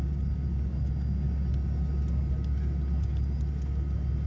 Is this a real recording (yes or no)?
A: yes